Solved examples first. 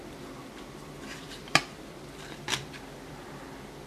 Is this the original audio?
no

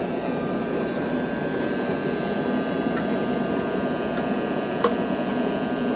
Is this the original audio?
yes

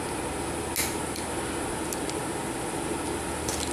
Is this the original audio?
yes